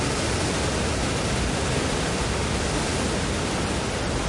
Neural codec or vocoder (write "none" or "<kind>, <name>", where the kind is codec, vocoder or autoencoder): none